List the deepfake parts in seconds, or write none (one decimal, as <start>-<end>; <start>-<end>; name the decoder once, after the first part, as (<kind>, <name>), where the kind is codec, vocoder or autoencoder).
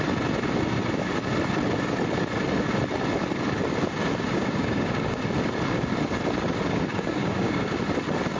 4.3-5.2 (codec, DAC); 6.9-7.8